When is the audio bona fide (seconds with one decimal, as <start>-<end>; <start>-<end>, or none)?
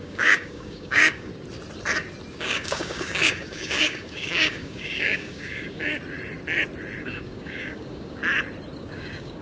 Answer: 1.3-2.3; 5.9-7.0; 8.2-8.8